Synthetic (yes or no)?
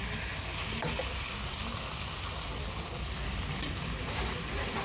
no